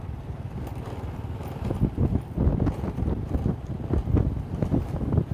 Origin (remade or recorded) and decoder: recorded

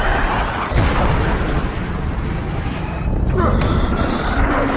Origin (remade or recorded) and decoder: remade, vocoder, BigVGAN v2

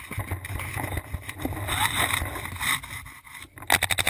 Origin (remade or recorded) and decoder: recorded